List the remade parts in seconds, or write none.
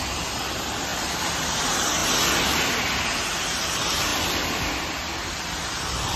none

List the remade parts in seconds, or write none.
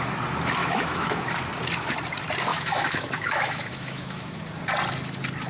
0.6-1.3 (autoencoder, DAC-VAE); 2.5-4.4